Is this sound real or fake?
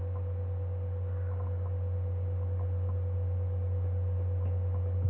real